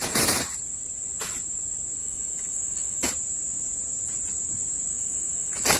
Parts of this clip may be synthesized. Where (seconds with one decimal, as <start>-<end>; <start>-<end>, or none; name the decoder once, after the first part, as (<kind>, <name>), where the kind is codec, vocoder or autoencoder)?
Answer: 2.0-3.1 (autoencoder, DAC-VAE); 4.9-5.8